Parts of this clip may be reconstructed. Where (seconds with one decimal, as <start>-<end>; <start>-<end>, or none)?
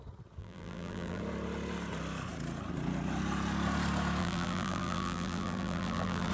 0.4-1.2; 4.2-6.3